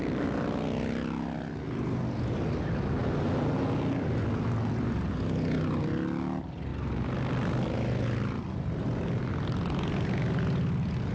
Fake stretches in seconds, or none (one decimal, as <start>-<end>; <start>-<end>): none